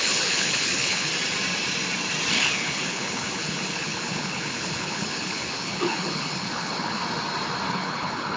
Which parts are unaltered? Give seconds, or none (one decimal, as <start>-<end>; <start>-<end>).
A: 1.1-2.3; 7.0-7.7